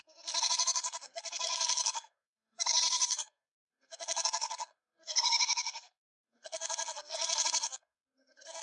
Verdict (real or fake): fake